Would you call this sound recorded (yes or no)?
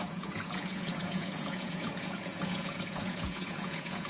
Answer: no